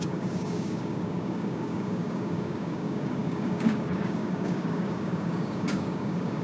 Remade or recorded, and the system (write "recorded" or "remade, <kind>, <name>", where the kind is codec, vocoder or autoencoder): remade, codec, DAC